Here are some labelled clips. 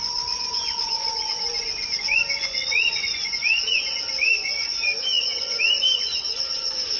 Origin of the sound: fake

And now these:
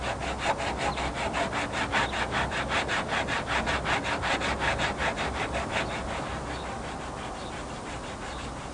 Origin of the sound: real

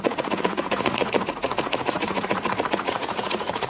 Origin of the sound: fake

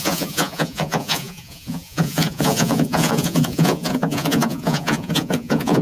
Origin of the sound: fake